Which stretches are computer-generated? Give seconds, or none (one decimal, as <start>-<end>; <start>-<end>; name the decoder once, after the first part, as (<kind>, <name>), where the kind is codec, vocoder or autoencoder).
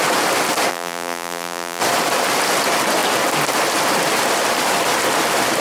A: 0.7-1.8 (vocoder, BigVGAN v2)